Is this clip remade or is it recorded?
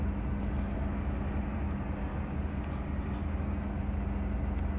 recorded